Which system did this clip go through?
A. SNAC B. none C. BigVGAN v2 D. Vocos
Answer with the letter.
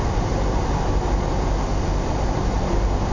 B